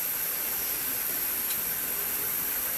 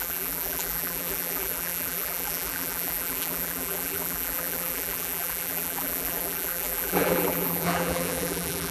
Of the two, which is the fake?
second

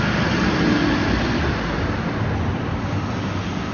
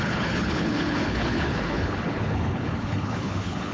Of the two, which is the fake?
second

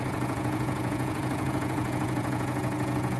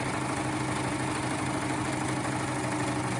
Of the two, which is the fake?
first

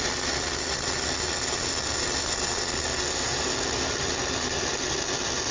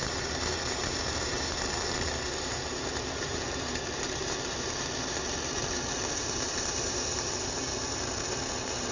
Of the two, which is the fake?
second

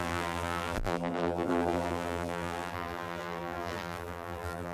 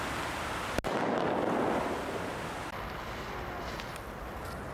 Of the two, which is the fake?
first